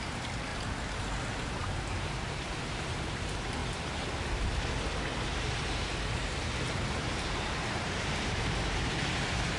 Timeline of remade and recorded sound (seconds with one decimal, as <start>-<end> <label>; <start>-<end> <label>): 0.0-0.5 remade; 0.5-1.2 recorded; 1.2-3.6 remade; 3.6-6.1 recorded; 6.1-9.6 remade